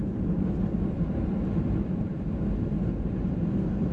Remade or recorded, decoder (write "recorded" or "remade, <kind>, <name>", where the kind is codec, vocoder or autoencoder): recorded